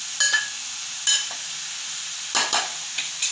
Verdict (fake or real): real